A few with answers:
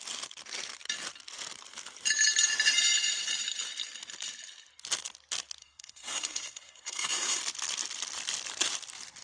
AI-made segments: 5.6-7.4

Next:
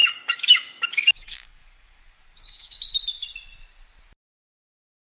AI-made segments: 0.0-2.8